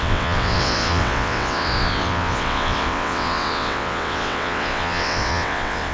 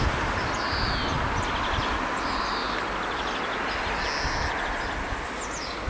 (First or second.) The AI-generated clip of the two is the first